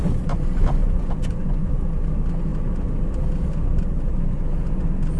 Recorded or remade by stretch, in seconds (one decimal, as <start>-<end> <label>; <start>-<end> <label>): 0.0-0.8 recorded; 0.8-1.7 remade; 1.7-5.2 recorded